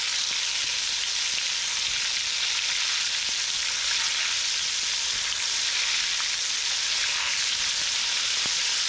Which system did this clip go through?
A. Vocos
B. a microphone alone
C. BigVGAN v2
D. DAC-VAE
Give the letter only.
B